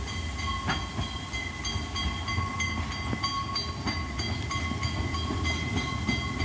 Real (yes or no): yes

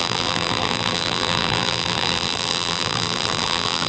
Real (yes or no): no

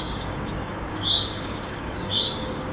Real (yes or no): no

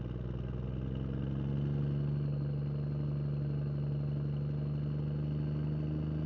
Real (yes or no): yes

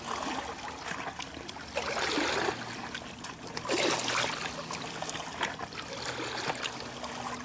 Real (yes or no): yes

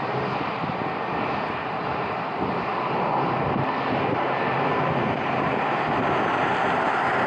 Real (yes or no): no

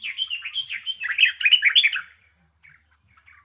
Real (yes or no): yes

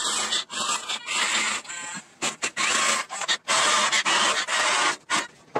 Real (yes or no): yes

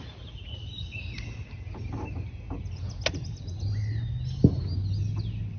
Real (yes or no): yes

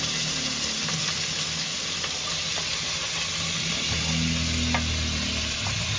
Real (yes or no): yes